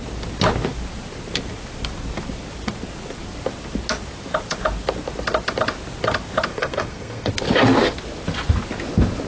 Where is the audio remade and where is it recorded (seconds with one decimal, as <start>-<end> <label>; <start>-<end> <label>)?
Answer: 0.0-6.5 recorded; 6.5-7.3 remade; 7.3-9.3 recorded